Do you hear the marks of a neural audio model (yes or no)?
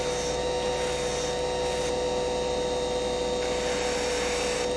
no